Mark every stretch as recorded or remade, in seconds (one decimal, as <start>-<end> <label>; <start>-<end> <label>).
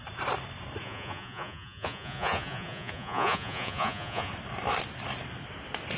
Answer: 0.0-0.8 recorded; 0.8-4.3 remade; 4.3-6.0 recorded